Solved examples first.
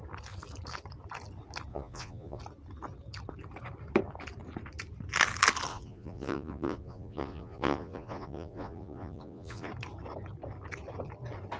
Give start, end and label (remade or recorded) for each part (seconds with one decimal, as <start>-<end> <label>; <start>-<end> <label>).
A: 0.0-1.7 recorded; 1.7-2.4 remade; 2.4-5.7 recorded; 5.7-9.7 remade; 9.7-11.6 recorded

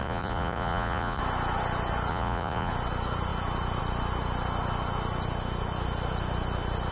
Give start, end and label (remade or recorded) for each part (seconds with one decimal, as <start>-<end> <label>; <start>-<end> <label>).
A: 0.0-1.2 remade; 1.2-2.1 recorded; 2.1-2.7 remade; 2.7-6.9 recorded

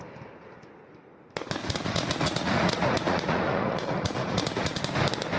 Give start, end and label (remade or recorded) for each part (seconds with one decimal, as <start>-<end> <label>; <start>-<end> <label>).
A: 0.0-1.6 recorded; 1.6-4.8 remade; 4.8-5.4 recorded